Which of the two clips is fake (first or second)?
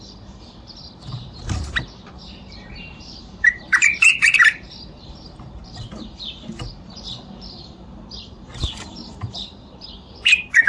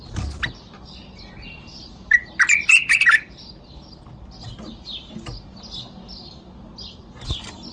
first